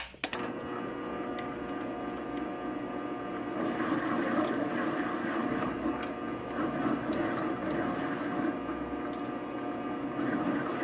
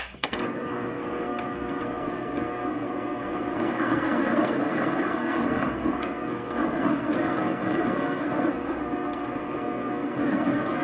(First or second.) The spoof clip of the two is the second